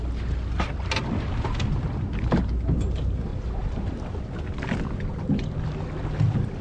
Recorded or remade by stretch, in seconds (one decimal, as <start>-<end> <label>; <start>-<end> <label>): 0.0-3.3 recorded; 3.3-4.0 remade; 4.0-6.6 recorded